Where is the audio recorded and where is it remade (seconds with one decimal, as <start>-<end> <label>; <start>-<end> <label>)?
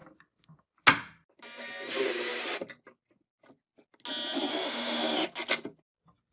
0.0-4.5 recorded; 4.5-5.0 remade; 5.0-6.3 recorded